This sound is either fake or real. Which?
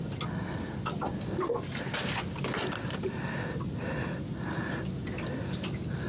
real